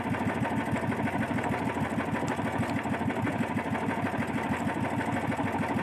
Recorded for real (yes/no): yes